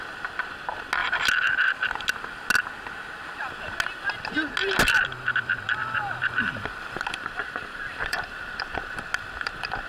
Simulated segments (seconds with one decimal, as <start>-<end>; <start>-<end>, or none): 5.8-8.8